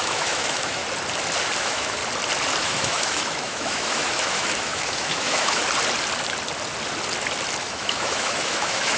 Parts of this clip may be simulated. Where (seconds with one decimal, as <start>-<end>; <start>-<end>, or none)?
0.0-0.8; 1.6-2.0; 2.6-5.6; 7.6-9.0